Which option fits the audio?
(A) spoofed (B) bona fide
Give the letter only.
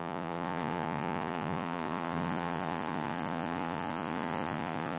A